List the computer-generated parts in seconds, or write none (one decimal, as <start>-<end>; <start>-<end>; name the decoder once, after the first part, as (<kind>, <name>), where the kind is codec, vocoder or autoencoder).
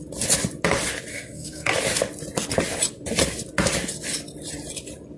1.1-1.7 (codec, SNAC)